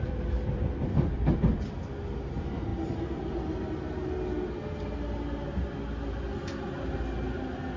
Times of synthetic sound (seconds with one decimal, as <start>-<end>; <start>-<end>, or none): 0.0-2.7